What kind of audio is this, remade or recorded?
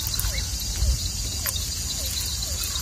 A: recorded